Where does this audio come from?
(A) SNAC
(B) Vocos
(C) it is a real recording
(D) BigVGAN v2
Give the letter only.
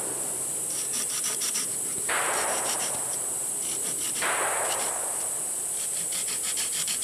D